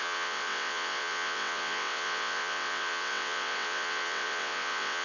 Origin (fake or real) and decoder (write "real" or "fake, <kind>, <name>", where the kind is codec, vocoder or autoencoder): fake, vocoder, WaveNeXt